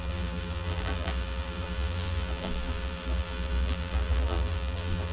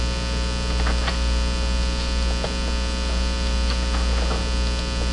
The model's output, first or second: first